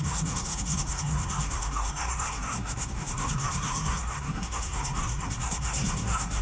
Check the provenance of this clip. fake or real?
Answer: fake